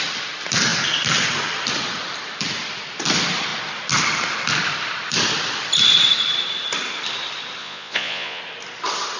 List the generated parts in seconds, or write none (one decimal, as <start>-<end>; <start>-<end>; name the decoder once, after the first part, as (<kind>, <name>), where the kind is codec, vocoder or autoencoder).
7.6-8.4 (vocoder, Vocos)